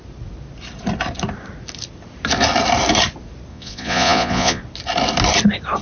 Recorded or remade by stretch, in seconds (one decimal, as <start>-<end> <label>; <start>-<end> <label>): 0.0-3.5 recorded; 3.5-4.6 remade; 4.6-5.8 recorded